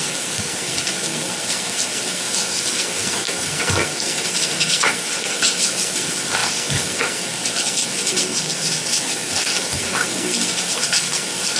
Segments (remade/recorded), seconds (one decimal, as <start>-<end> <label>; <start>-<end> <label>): 0.0-11.6 remade